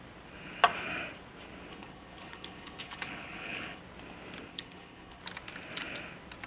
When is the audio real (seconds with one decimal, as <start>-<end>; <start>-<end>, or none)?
0.0-1.7; 3.8-4.5; 5.2-6.5